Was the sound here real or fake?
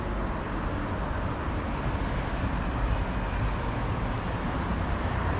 real